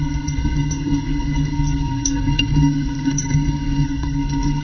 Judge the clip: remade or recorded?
remade